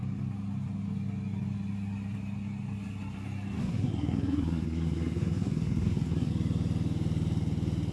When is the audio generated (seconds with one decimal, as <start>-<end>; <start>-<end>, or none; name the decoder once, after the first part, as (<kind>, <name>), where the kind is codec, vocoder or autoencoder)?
3.6-6.3 (codec, SNAC)

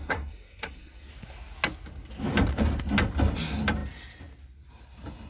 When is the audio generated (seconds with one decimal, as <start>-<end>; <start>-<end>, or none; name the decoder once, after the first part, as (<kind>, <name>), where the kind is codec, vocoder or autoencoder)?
0.0-1.1 (codec, SNAC)

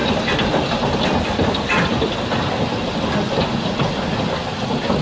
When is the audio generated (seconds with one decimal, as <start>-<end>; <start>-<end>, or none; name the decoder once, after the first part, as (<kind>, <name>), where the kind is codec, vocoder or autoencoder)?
none

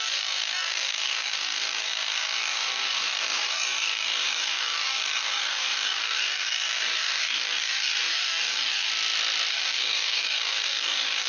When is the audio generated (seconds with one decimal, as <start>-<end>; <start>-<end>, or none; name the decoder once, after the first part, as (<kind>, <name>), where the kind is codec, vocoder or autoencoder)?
0.0-8.9 (codec, DAC); 9.5-11.3

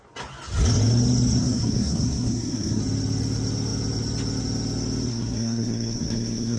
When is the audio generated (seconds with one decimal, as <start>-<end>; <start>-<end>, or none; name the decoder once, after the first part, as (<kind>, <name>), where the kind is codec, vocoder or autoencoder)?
1.4-2.8 (codec, SNAC); 5.1-6.6

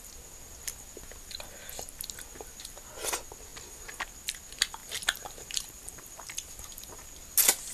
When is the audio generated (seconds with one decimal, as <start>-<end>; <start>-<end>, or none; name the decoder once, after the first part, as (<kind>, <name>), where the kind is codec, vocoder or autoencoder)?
4.8-7.1 (vocoder, BigVGAN v2)